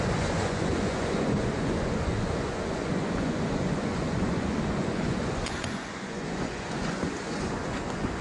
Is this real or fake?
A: fake